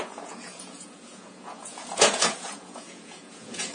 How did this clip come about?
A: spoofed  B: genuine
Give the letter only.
A